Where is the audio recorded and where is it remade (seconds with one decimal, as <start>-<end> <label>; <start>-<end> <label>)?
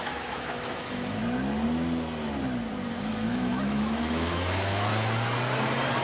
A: 0.0-1.2 remade; 1.2-3.1 recorded; 3.1-4.9 remade; 4.9-6.0 recorded